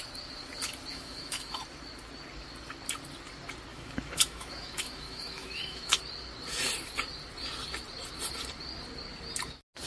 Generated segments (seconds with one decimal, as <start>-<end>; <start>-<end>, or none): 0.9-1.6; 3.7-6.0